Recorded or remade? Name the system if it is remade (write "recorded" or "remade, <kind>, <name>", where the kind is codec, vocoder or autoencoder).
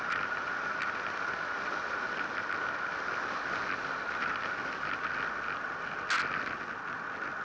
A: recorded